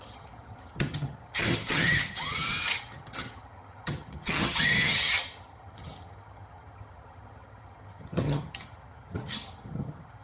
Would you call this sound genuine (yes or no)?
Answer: no